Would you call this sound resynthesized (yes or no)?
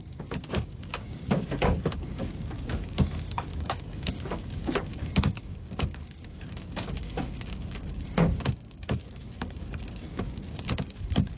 yes